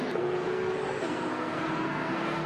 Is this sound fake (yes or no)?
yes